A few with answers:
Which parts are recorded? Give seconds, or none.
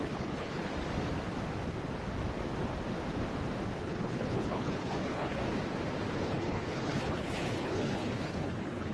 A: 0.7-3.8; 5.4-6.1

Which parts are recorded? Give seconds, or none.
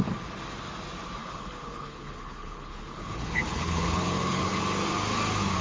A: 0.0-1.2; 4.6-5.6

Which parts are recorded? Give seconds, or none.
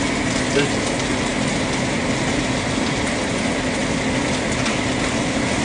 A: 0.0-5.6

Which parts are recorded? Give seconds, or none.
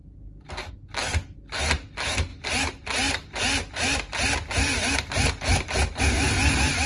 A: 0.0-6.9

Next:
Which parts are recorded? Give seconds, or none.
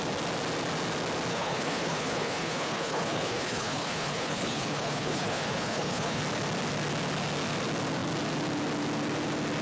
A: 0.0-1.3; 6.2-9.6